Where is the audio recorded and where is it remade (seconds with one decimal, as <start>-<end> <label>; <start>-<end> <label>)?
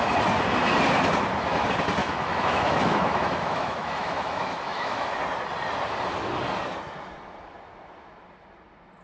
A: 0.0-2.0 recorded; 2.0-5.2 remade; 5.2-9.0 recorded